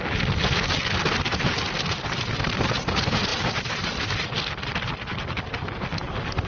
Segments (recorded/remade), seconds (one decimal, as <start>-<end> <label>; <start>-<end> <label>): 0.0-6.5 recorded